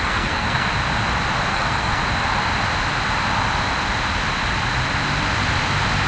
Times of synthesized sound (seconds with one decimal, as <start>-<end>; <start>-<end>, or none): 0.0-0.7; 1.5-2.0